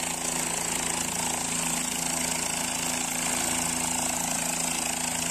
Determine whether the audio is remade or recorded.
recorded